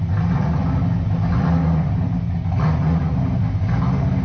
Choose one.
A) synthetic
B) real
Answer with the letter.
B